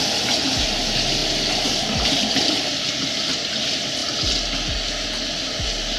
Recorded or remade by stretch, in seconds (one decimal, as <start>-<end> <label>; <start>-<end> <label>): 0.0-6.0 recorded

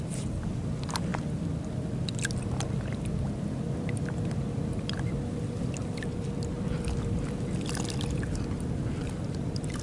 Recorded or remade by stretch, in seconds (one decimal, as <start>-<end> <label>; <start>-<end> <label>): 0.0-9.8 recorded

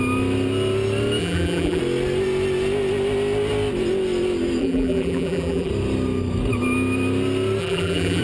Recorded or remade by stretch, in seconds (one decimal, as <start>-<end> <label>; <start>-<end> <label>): 0.0-1.2 recorded; 1.2-1.8 remade; 1.8-4.6 recorded; 4.6-5.7 remade; 5.7-7.6 recorded; 7.6-8.2 remade

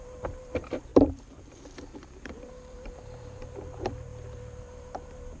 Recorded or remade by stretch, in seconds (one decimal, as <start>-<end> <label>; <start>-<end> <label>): 0.0-4.1 remade; 4.1-5.0 recorded; 5.0-5.4 remade

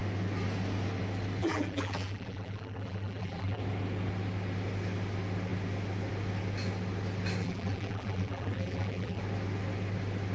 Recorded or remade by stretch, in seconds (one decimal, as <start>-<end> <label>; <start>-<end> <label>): 0.0-1.4 recorded; 1.4-3.6 remade; 3.6-7.4 recorded; 7.4-9.2 remade; 9.2-10.3 recorded